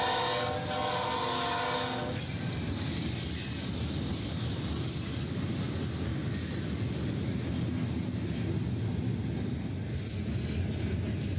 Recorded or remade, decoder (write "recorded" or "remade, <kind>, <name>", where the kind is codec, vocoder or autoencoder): recorded